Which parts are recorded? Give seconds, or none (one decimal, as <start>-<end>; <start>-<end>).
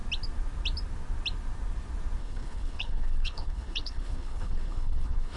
0.0-2.2